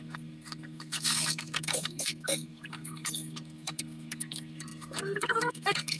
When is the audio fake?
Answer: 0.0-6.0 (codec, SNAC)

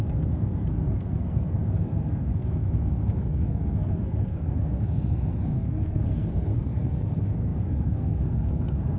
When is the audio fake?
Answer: 0.0-9.0 (codec, SNAC)